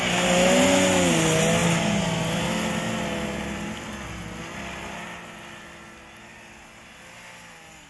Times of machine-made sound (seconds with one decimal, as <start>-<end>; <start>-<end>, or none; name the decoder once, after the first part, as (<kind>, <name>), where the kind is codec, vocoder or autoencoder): none